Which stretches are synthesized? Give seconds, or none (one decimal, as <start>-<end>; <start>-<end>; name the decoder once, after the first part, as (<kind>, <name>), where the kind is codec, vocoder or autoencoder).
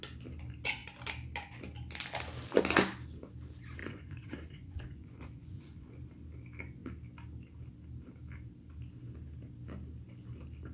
3.8-6.0 (vocoder, Vocos)